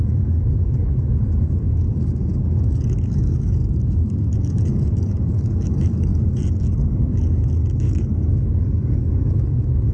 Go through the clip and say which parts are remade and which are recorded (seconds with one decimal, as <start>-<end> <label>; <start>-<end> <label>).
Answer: 0.0-9.9 remade